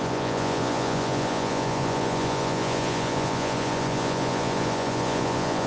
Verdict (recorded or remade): remade